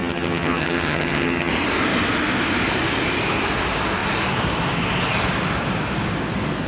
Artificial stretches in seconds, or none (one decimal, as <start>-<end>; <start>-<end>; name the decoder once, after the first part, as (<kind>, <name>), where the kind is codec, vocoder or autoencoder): 0.0-1.5 (vocoder, HiFi-GAN)